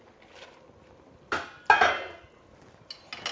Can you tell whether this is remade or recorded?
recorded